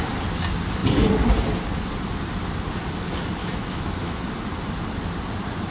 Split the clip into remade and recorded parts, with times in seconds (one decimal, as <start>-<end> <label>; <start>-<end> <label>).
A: 0.0-3.4 recorded; 3.4-4.3 remade; 4.3-5.7 recorded